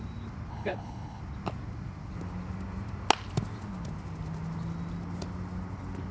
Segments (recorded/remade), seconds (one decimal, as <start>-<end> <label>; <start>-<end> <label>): 0.0-0.5 recorded; 0.5-1.2 remade; 1.2-6.1 recorded